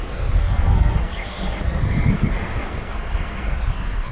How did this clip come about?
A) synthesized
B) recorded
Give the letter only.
A